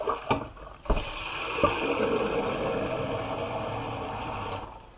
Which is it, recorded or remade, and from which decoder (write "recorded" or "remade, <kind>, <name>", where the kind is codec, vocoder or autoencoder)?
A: recorded